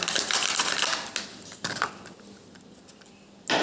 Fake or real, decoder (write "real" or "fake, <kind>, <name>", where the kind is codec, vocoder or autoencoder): real